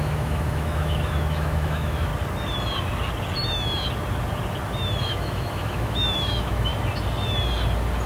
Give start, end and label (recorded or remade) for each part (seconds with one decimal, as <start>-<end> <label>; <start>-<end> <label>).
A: 0.0-2.1 remade; 2.1-5.0 recorded; 5.0-6.7 remade; 6.7-8.1 recorded